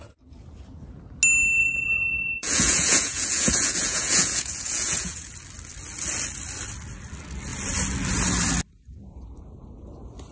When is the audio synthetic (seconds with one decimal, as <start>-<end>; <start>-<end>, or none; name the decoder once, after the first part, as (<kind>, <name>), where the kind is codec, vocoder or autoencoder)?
1.6-5.3 (vocoder, Vocos)

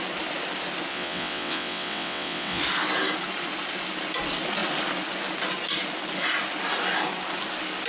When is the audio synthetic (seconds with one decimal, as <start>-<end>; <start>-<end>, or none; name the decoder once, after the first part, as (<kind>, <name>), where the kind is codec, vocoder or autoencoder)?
0.9-2.6 (vocoder, WaveNeXt)

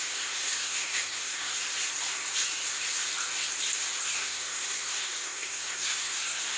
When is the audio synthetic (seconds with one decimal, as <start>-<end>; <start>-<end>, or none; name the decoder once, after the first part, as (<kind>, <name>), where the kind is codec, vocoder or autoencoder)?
0.0-1.5 (codec, SNAC); 4.0-6.6